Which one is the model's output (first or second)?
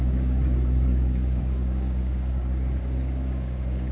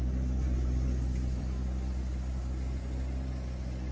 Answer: first